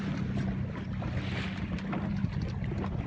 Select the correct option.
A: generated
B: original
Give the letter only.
B